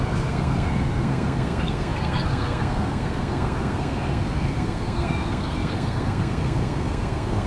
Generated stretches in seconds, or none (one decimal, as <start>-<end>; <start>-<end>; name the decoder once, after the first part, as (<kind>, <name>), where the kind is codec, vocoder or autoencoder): 0.0-7.5 (codec, SNAC)

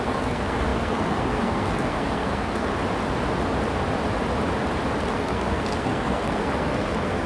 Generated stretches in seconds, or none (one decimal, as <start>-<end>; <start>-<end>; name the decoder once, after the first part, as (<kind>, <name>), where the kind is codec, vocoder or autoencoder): 0.0-2.7 (codec, SNAC); 5.0-7.3